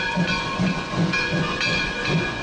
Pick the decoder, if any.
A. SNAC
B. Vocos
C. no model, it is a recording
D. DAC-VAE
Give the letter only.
B